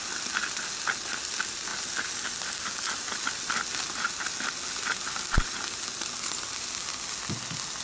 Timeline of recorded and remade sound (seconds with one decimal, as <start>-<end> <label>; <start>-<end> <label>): 0.0-7.8 recorded

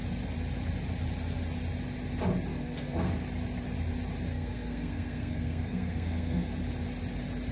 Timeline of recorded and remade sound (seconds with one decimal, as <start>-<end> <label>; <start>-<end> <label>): 0.0-2.5 recorded; 2.5-3.1 remade; 3.1-4.3 recorded; 4.3-6.5 remade; 6.5-7.5 recorded

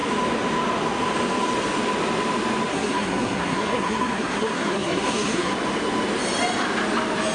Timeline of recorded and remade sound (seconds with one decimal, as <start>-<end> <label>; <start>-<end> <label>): 0.0-2.7 recorded; 2.7-5.5 remade; 5.5-7.3 recorded

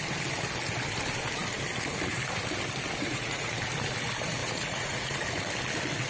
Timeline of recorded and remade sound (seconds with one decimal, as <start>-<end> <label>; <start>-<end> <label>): 0.0-3.0 recorded; 3.0-3.5 remade; 3.5-4.4 recorded; 4.4-5.4 remade; 5.4-6.1 recorded